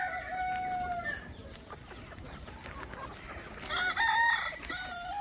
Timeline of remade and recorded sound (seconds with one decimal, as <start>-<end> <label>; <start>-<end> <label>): 0.0-5.2 recorded